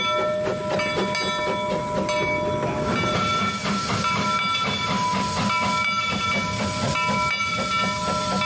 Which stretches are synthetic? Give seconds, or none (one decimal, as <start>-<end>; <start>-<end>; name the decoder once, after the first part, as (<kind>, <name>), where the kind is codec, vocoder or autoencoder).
none